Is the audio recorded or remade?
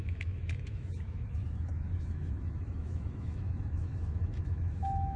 remade